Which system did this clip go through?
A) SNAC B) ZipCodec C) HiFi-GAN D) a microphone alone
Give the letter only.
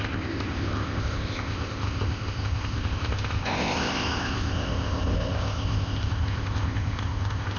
B